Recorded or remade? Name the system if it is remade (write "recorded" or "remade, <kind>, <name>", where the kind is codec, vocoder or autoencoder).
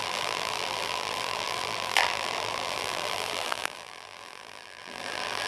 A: remade, vocoder, BigVGAN v2